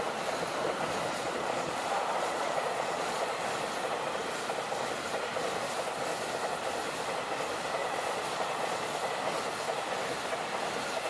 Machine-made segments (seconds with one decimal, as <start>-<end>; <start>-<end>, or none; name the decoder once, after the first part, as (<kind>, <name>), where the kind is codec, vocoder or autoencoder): 1.1-3.3 (vocoder, Vocos); 7.8-8.9